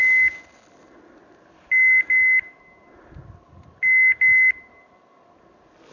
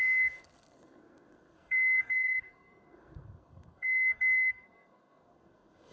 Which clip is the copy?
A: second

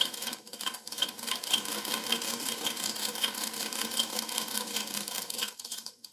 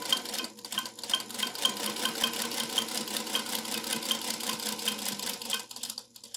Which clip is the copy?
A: first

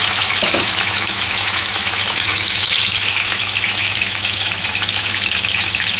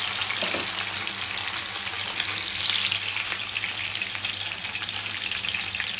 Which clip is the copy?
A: first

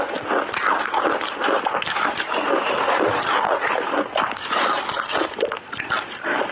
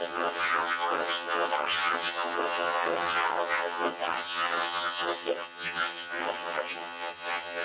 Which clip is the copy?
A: second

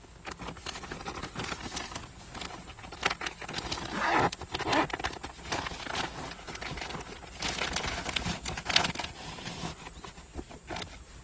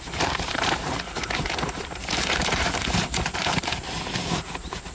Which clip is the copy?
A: second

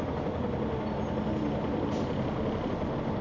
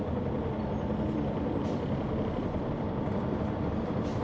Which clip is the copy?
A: second